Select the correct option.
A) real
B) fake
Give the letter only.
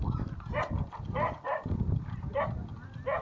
A